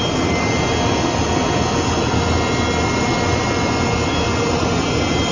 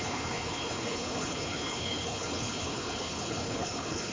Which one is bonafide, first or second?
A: first